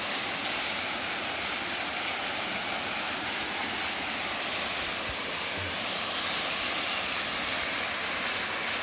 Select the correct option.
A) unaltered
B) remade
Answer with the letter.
A